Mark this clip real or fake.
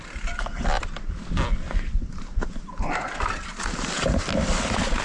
real